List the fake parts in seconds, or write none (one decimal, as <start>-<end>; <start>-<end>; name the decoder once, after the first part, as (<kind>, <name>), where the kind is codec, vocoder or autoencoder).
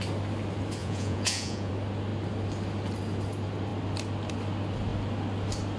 0.8-1.7 (vocoder, Vocos)